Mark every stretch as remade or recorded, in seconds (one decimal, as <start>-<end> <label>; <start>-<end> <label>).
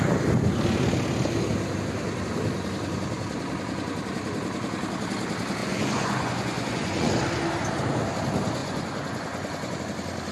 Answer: 0.0-5.6 recorded; 5.6-7.1 remade; 7.1-8.6 recorded; 8.6-9.8 remade; 9.8-10.3 recorded